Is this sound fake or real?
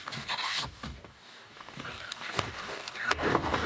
fake